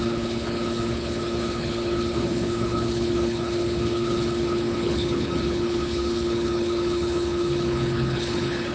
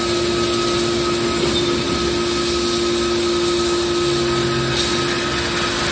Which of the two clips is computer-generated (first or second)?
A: first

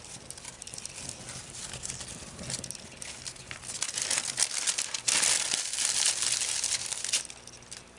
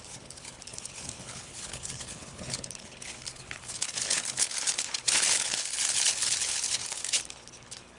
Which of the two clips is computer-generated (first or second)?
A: second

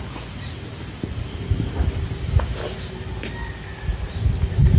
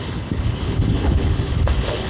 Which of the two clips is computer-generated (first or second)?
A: second